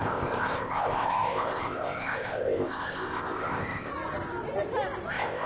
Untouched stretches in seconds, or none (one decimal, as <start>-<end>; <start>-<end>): 3.9-5.1

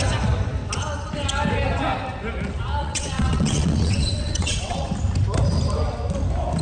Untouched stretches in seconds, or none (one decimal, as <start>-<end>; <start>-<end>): 0.0-2.8; 4.9-6.6

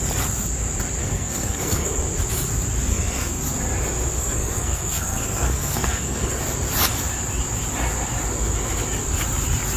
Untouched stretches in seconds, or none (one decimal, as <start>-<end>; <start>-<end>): 0.0-1.0; 2.0-2.9; 3.4-4.2; 6.4-9.8

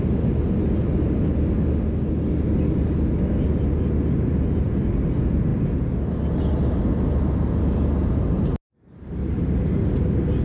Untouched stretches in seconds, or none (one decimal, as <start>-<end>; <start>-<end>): 0.0-10.4

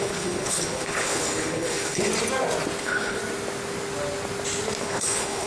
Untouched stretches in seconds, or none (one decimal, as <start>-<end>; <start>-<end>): 2.1-2.8; 3.2-4.8